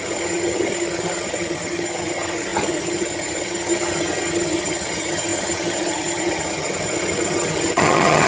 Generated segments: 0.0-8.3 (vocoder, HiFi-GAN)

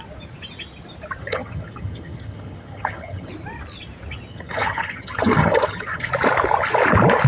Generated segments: 1.2-3.3 (vocoder, HiFi-GAN); 4.3-6.1

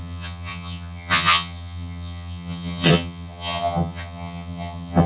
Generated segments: 0.0-5.1 (vocoder, HiFi-GAN)

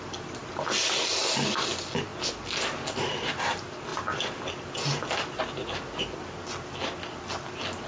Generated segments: none